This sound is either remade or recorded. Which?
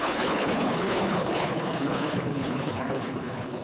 remade